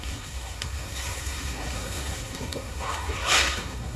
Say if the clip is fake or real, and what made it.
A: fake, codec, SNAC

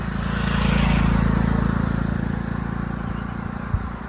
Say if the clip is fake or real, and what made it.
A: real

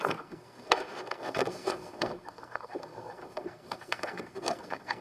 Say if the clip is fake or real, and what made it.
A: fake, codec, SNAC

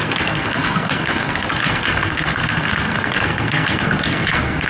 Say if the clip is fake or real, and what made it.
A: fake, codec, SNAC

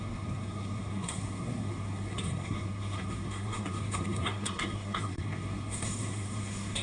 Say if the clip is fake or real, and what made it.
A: fake, codec, SNAC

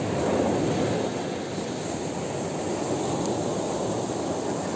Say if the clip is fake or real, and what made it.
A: real